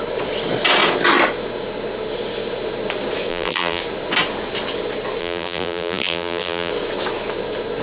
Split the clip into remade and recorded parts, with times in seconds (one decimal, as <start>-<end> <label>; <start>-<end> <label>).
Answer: 0.0-3.3 recorded; 3.3-3.8 remade; 3.8-5.2 recorded; 5.2-6.7 remade; 6.7-7.8 recorded